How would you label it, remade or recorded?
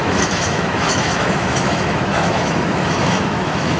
remade